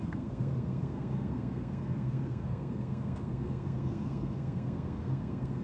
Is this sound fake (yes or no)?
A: yes